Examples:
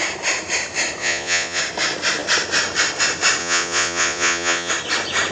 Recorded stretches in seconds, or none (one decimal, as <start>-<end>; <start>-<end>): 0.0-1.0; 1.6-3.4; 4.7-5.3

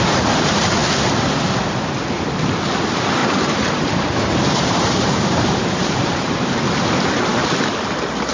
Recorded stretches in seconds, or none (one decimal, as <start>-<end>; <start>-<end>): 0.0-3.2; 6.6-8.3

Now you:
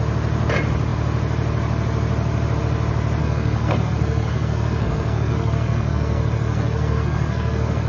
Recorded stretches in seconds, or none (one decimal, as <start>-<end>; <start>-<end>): 0.0-3.2